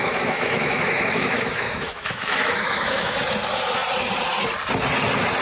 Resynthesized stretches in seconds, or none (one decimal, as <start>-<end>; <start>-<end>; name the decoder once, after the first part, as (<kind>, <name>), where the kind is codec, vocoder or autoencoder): 0.0-3.2 (autoencoder, DAC-VAE)